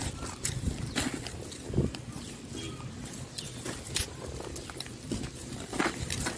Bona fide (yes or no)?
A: yes